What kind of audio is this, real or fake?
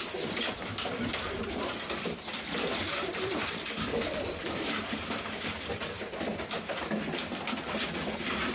fake